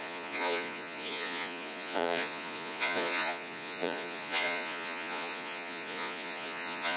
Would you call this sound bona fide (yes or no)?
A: no